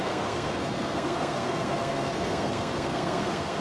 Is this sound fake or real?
fake